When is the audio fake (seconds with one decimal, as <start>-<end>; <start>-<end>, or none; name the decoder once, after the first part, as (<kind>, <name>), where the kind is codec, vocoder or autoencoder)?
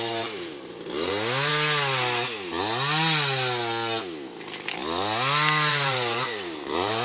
0.0-1.5 (vocoder, BigVGAN v2); 5.7-7.0